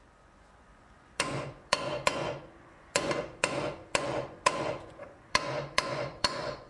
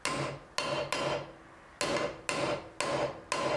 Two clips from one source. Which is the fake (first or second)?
first